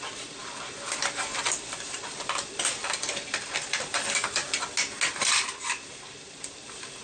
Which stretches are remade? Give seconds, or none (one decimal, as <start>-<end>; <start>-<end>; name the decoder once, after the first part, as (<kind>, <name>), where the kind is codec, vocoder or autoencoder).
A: 0.0-4.4 (vocoder, BigVGAN v2); 5.1-7.0